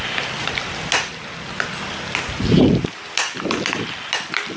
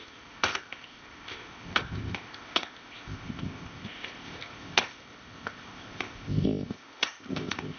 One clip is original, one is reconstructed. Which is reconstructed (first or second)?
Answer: second